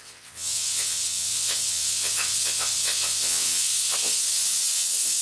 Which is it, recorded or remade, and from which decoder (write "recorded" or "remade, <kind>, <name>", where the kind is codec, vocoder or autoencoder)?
remade, vocoder, WaveNeXt